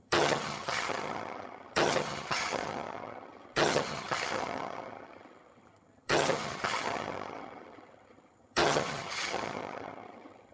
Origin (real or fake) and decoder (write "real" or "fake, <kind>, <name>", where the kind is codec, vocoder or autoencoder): fake, vocoder, HiFi-GAN